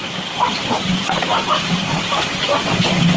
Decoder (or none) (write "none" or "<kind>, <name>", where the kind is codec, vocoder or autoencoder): none